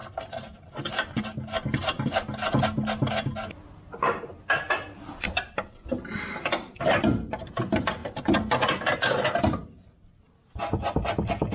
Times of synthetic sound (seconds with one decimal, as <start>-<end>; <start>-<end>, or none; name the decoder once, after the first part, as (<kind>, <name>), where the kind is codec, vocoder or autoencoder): none